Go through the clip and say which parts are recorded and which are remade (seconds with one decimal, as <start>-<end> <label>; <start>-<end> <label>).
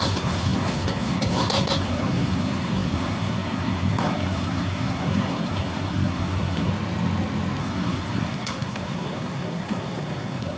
0.0-6.7 remade; 6.7-7.6 recorded; 7.6-10.6 remade